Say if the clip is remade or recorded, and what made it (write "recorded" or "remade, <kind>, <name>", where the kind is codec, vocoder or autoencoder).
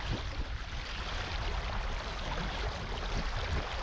recorded